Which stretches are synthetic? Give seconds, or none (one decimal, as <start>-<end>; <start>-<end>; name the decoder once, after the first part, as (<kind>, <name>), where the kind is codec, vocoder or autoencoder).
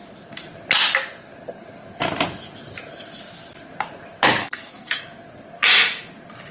4.4-5.0 (codec, SNAC)